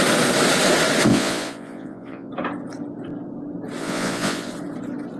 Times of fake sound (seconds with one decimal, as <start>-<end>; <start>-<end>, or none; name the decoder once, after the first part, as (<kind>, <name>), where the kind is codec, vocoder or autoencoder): 1.1-2.3 (vocoder, Vocos); 3.8-4.5